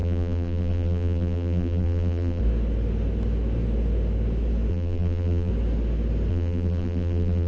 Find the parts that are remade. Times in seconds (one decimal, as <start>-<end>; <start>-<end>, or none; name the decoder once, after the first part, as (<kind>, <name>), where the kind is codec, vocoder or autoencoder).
0.0-2.4 (vocoder, BigVGAN v2); 4.7-5.5; 6.3-7.5